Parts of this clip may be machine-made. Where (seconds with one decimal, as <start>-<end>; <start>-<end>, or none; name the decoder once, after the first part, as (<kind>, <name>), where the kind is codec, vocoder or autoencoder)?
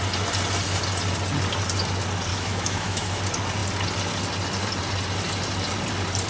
2.3-3.2 (autoencoder, DAC-VAE)